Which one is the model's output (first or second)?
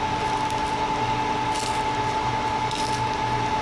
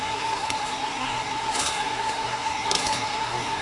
second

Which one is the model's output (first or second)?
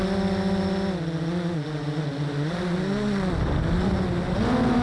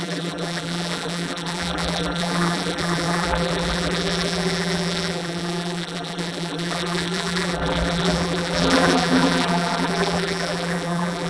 second